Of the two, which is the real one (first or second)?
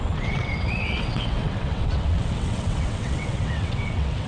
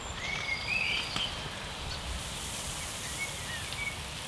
second